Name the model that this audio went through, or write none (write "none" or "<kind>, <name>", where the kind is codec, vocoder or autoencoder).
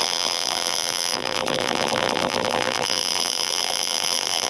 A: vocoder, BigVGAN v2